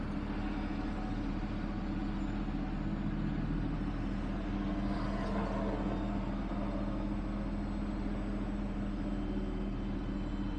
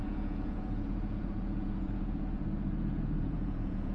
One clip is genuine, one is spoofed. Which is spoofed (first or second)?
second